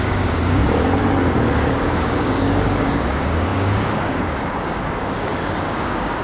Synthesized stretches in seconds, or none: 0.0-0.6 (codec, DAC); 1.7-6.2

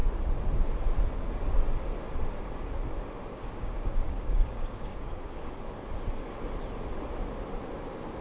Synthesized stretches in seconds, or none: 3.3-5.5 (codec, DAC)

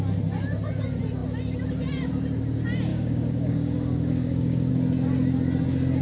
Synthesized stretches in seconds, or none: 2.9-4.7 (codec, DAC)

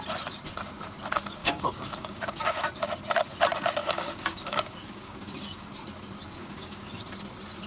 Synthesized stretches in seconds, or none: 1.4-2.7 (codec, DAC); 3.8-5.7; 6.4-7.0

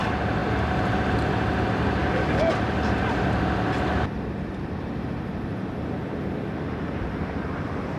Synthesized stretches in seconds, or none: 2.0-2.5 (codec, DAC)

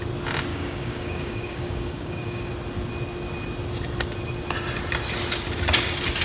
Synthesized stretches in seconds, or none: 0.5-2.5 (codec, DAC)

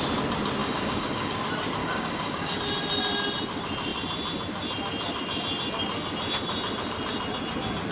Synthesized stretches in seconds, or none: 0.6-1.4 (codec, DAC); 1.8-2.6